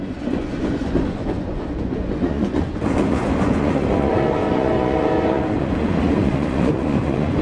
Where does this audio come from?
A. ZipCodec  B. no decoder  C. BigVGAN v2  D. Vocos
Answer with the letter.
D